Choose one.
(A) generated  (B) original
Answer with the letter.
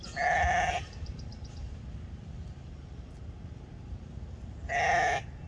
B